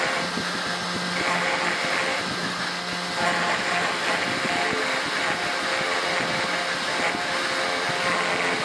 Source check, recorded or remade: recorded